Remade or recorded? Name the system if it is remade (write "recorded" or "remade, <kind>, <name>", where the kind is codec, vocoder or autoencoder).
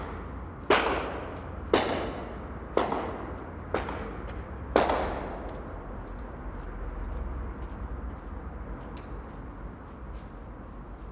recorded